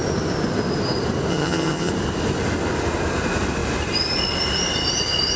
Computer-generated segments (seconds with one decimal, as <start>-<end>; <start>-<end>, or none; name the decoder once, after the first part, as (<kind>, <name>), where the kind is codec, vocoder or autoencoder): 1.3-1.9 (vocoder, HiFi-GAN)